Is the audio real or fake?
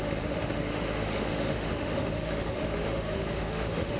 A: fake